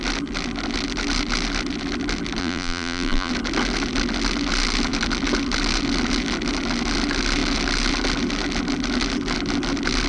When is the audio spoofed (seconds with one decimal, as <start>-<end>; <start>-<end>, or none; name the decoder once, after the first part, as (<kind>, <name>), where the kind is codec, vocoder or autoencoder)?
2.4-3.3 (vocoder, BigVGAN v2)